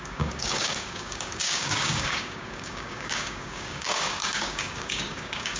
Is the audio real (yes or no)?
no